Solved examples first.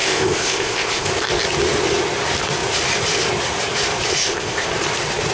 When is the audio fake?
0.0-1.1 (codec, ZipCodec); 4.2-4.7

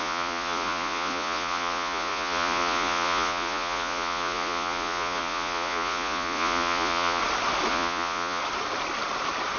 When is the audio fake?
0.0-7.2 (vocoder, Vocos); 7.7-8.4

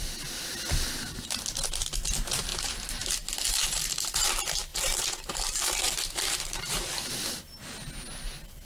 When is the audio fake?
2.5-3.1 (vocoder, BigVGAN v2); 3.6-4.2; 4.7-7.1